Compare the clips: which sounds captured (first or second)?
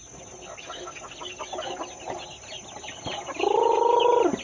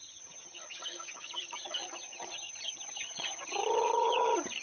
first